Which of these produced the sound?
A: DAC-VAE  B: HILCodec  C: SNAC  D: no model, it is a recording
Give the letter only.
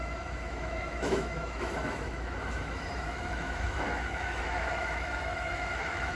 A